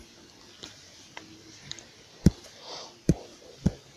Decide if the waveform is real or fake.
real